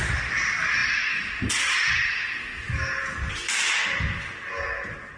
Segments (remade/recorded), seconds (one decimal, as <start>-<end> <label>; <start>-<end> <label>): 0.0-5.2 recorded